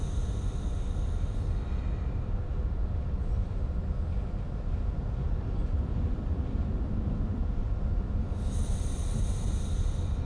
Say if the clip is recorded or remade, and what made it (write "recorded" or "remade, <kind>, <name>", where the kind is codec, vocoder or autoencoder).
recorded